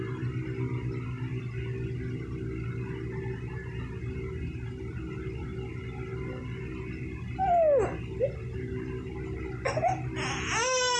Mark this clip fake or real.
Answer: real